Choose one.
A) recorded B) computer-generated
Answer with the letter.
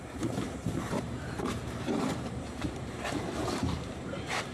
B